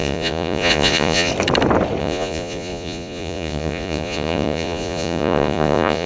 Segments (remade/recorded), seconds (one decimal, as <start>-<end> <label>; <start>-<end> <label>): 0.0-1.3 remade; 1.3-2.0 recorded; 2.0-6.1 remade